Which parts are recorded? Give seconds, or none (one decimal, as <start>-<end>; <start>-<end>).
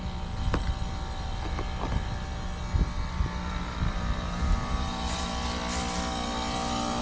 0.0-3.9; 5.3-7.0